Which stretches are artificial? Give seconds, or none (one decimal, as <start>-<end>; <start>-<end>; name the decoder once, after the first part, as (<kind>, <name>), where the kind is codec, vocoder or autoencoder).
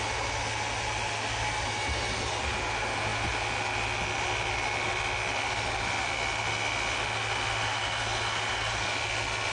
none